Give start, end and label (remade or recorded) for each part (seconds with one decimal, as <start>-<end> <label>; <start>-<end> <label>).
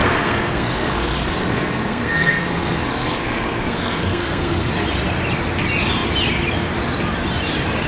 0.0-4.7 remade; 4.7-7.9 recorded